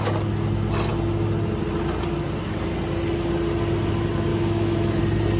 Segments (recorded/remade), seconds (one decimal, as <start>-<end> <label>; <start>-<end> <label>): 0.0-4.3 recorded; 4.3-5.0 remade; 5.0-5.4 recorded